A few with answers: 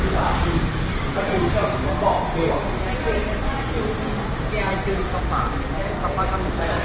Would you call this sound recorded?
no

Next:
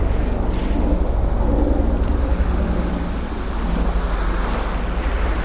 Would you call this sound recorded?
yes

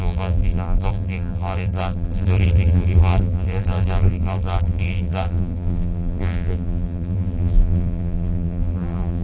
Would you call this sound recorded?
no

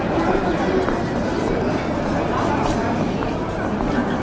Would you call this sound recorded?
yes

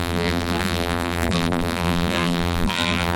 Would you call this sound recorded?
no